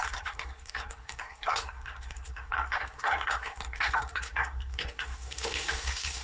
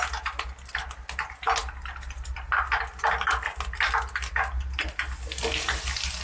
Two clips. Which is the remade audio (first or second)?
first